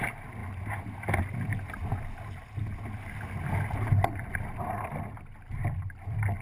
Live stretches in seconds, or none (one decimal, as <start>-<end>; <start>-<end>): 0.0-6.4

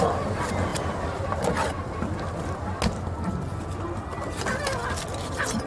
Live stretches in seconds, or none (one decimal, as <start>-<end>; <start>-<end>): 0.0-5.7

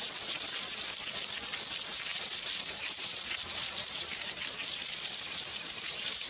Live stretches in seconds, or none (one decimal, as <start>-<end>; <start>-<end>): 0.0-2.1

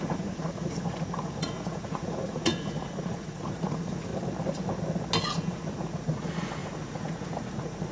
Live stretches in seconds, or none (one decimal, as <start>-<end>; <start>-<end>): 4.1-5.2

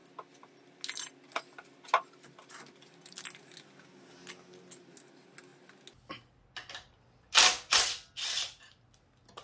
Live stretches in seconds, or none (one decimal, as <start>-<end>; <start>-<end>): 0.0-9.4

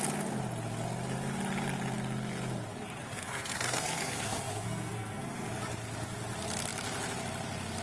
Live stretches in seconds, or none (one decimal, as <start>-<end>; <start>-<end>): 0.0-3.1; 5.5-7.8

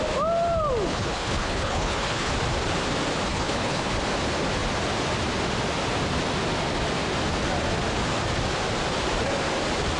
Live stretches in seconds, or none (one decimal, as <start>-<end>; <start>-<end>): 0.0-0.9; 2.3-3.3; 3.9-10.0

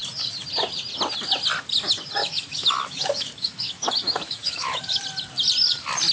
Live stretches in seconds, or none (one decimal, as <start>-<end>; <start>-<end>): 0.0-2.2; 5.0-6.1